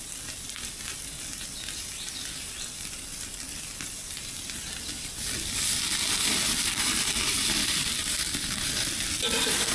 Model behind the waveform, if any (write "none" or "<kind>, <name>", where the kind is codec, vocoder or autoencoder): vocoder, BigVGAN v2